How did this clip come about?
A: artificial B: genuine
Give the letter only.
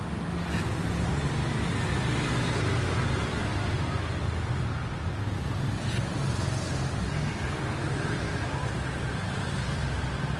B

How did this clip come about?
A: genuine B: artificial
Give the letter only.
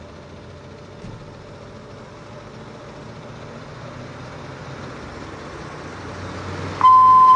A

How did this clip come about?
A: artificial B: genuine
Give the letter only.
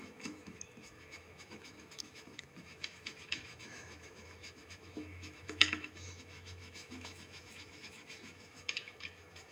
A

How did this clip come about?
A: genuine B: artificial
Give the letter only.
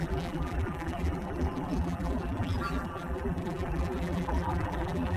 B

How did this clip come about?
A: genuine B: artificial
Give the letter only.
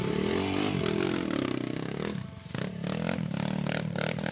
A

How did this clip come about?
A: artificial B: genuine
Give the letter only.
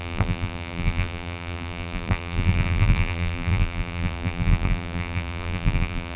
A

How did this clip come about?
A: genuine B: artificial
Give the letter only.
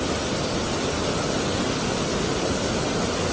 A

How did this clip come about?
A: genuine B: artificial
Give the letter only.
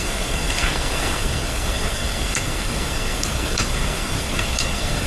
B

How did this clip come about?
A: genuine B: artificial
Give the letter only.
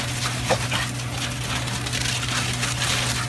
A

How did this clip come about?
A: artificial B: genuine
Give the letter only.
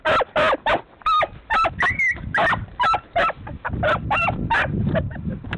B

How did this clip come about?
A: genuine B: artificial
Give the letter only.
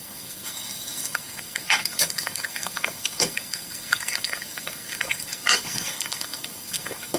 B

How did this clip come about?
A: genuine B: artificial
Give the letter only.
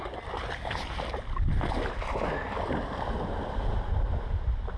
A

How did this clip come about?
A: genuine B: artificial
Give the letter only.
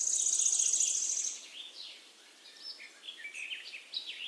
A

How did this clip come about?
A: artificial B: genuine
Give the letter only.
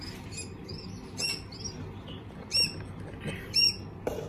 B